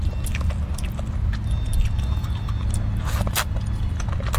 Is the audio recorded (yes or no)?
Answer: yes